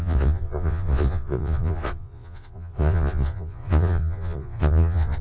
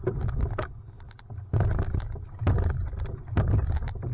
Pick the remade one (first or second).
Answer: first